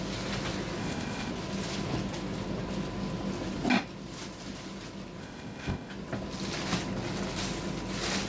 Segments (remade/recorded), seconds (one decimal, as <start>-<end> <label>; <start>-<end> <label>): 0.0-0.8 recorded; 0.8-1.3 remade; 1.3-5.2 recorded; 5.2-5.9 remade; 5.9-8.3 recorded